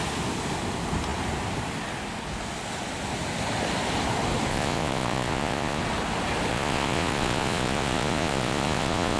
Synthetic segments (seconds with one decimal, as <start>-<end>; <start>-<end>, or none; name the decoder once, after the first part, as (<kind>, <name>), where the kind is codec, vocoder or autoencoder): 4.5-5.8 (vocoder, Vocos); 6.5-9.2